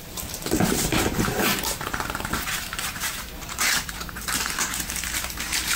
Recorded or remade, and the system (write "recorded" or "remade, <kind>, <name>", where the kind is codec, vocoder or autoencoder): remade, vocoder, BigVGAN v2